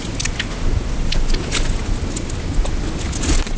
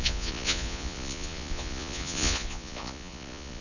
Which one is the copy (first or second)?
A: second